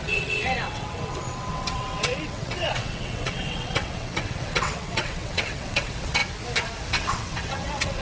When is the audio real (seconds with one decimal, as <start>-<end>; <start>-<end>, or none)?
6.2-6.9

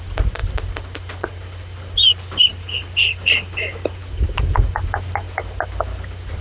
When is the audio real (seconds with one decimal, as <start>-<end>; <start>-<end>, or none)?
0.0-6.4

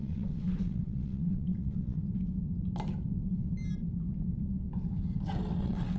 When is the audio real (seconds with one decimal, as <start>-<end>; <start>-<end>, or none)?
2.0-5.6

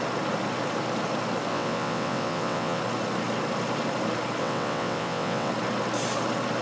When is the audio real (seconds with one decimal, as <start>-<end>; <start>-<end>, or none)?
0.0-1.5; 2.8-4.4; 5.5-6.6

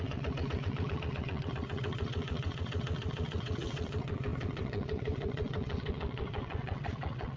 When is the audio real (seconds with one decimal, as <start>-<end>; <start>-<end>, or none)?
none

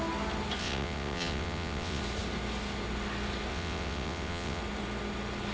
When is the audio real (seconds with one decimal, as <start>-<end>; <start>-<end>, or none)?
0.0-0.6; 2.0-3.5; 4.6-5.5